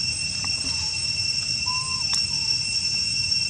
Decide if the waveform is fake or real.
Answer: real